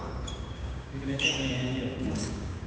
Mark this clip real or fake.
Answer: fake